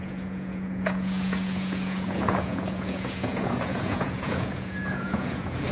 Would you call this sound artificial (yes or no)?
yes